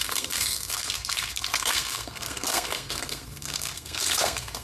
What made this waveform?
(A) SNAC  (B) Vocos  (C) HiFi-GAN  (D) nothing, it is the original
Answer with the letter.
A